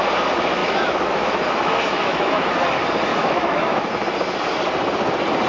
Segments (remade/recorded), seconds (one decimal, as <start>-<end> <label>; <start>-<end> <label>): 0.0-0.6 recorded; 0.6-2.5 remade; 2.5-3.1 recorded; 3.1-3.9 remade; 3.9-5.5 recorded